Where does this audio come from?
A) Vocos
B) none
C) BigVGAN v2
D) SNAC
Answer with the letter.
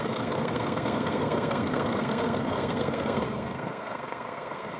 D